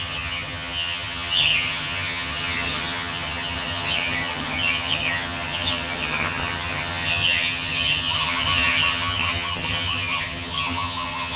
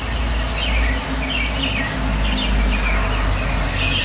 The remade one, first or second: first